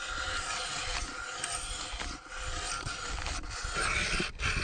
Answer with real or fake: real